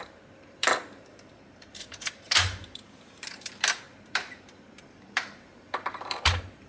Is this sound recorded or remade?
remade